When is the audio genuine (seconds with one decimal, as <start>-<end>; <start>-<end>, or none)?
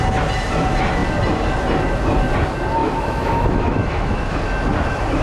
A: 0.0-2.8; 4.4-5.2